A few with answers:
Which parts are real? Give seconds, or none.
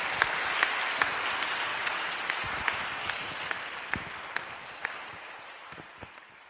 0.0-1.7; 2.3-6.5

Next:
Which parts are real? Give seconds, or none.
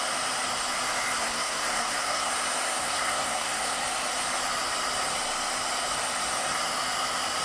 0.0-1.2; 2.3-2.8; 3.8-7.4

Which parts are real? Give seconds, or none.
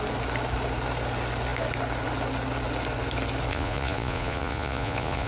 0.0-3.5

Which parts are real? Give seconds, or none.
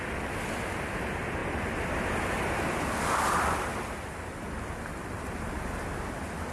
0.0-6.5